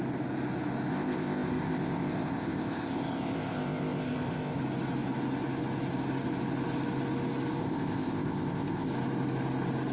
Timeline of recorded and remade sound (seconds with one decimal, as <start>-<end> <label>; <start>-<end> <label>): 0.0-0.9 recorded; 0.9-4.6 remade; 4.6-7.6 recorded; 7.6-8.9 remade; 8.9-9.9 recorded